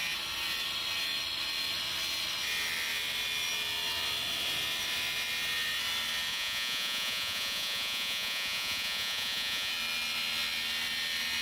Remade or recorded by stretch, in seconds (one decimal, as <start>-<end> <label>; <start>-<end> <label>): 0.0-6.3 recorded; 6.3-9.7 remade; 9.7-11.4 recorded